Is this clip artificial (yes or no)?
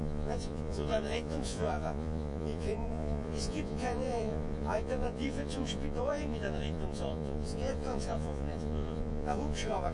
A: yes